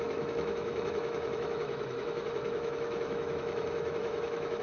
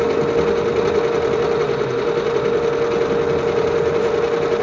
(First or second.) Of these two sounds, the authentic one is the second